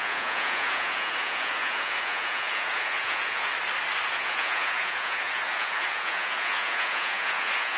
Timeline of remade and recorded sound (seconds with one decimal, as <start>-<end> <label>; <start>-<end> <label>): 0.0-3.5 remade; 3.5-4.1 recorded; 4.1-7.8 remade